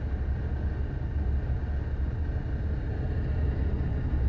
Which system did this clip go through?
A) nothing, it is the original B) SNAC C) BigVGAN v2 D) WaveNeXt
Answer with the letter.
A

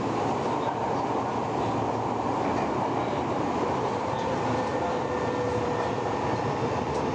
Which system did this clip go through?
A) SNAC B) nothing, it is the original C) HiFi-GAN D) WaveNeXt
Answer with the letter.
B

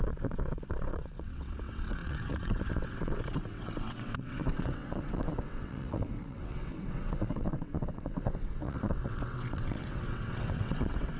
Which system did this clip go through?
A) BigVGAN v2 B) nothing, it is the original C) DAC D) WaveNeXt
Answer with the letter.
D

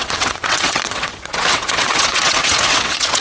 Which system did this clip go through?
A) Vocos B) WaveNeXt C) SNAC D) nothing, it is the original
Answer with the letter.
B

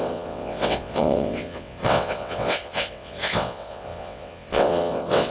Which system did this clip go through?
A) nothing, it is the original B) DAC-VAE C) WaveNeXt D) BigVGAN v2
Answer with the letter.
C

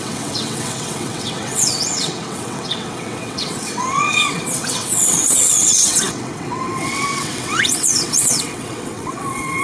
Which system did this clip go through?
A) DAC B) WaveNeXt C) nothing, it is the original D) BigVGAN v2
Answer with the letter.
B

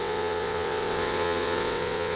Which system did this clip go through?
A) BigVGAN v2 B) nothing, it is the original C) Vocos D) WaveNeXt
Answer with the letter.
D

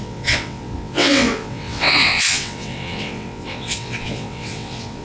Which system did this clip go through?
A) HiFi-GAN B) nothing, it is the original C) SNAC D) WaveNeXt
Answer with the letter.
D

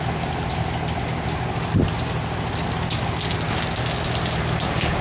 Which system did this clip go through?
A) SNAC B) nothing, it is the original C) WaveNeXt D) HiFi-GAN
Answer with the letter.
B